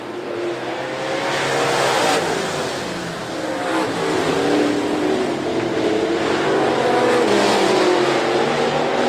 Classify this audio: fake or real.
real